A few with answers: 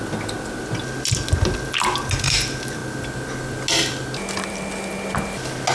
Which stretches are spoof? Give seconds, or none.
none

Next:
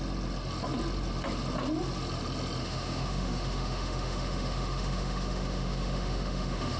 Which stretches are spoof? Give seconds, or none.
2.6-6.8 (autoencoder, DAC-VAE)

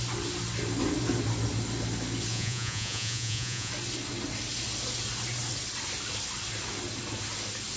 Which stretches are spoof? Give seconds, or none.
2.3-3.7 (vocoder, Vocos)

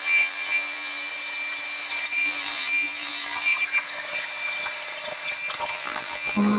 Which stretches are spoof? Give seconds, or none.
0.0-1.1 (vocoder, BigVGAN v2); 2.2-3.5; 5.7-6.6

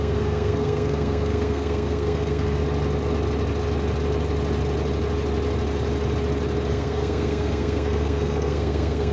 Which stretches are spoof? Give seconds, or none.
0.0-2.6 (codec, SNAC); 6.7-9.1

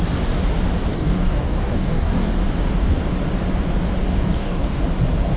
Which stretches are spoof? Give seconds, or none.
0.9-2.3 (codec, DAC); 4.0-4.8

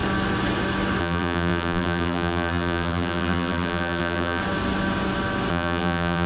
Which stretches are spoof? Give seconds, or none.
1.0-4.4 (vocoder, BigVGAN v2); 5.5-6.3

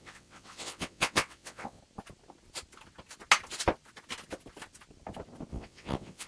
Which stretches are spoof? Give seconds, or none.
0.0-1.8 (vocoder, WaveNeXt); 5.5-6.3